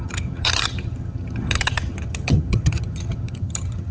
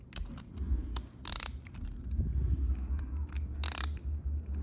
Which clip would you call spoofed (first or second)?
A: first